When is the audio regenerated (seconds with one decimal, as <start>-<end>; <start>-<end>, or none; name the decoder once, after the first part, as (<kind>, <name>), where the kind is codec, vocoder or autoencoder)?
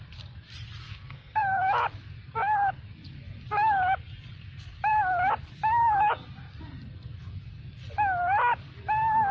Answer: 0.8-1.6 (codec, SNAC)